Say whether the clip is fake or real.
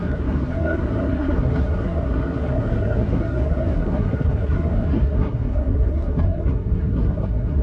fake